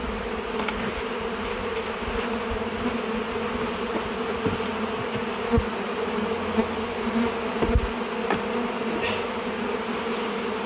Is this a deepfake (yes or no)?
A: no